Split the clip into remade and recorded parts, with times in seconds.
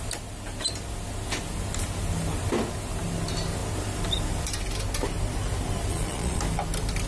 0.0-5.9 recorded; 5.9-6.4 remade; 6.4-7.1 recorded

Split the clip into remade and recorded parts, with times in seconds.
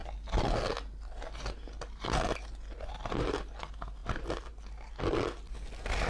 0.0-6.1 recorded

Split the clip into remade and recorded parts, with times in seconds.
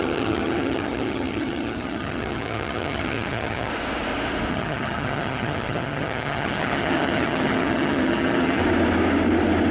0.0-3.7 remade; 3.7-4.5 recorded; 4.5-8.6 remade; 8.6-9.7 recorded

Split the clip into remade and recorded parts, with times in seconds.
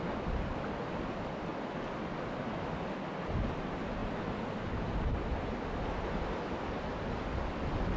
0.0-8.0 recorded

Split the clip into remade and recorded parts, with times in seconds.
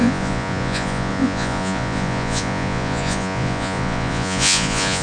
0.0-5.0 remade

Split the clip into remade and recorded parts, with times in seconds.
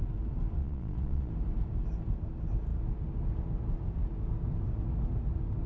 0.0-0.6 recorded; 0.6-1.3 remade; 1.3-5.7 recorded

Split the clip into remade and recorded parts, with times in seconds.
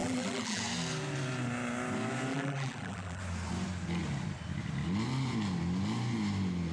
0.0-0.6 remade; 0.6-2.3 recorded; 2.3-3.2 remade; 3.2-6.7 recorded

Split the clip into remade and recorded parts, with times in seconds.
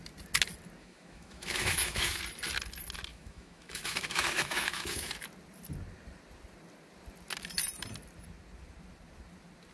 0.0-0.8 recorded; 0.8-2.2 remade; 2.2-3.1 recorded; 3.1-5.2 remade; 5.2-9.7 recorded